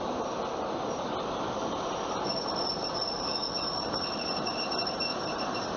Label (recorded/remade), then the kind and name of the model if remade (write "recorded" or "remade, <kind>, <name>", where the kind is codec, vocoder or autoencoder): recorded